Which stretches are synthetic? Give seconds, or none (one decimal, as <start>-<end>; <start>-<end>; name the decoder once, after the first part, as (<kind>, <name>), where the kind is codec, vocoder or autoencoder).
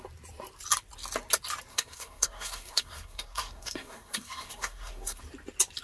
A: 1.7-5.2 (codec, SNAC)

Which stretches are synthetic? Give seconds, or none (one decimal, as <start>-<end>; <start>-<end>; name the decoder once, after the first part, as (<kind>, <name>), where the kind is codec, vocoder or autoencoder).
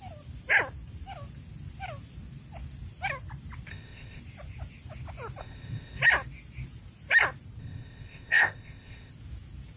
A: 3.7-4.2 (codec, ZipCodec); 5.4-6.0; 7.6-9.1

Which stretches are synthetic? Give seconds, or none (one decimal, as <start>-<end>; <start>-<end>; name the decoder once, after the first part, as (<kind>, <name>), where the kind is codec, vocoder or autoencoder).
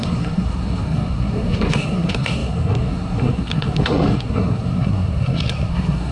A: 0.0-6.1 (codec, SNAC)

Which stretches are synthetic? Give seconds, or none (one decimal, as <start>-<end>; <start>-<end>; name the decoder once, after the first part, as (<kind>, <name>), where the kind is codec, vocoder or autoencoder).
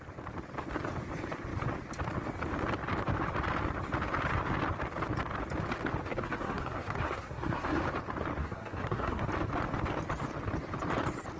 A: 6.1-7.8 (codec, SNAC); 8.4-9.3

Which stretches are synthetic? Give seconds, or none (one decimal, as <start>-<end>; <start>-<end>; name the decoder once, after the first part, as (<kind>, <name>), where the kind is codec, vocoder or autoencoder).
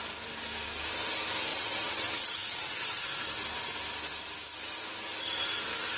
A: 1.5-3.0 (vocoder, WaveNeXt)